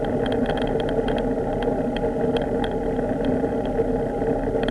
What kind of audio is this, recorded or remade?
recorded